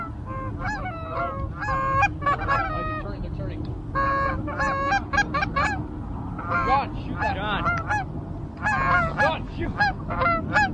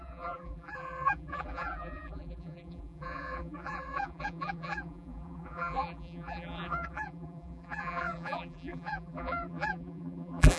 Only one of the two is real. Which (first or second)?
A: first